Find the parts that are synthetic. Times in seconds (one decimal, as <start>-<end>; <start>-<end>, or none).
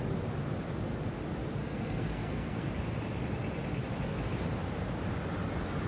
1.6-2.7